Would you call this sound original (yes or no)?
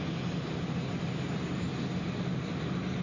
yes